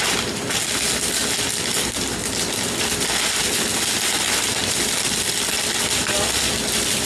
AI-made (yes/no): no